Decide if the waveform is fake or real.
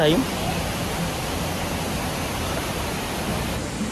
real